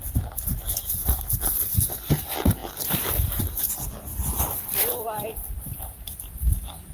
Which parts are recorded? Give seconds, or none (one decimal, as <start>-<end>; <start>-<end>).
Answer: 0.0-2.6; 3.4-4.1; 6.5-6.9